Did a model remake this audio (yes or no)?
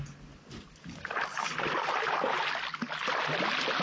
no